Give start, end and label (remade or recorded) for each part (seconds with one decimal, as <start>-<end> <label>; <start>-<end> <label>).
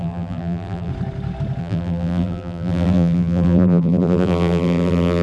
0.0-0.9 remade; 0.9-1.6 recorded; 1.6-5.2 remade